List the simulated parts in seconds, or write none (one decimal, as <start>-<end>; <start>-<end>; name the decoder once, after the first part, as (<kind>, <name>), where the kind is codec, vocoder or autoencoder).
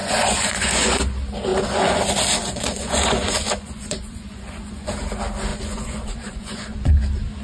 0.0-1.0 (vocoder, Vocos); 1.5-2.0; 2.4-4.9; 5.5-7.0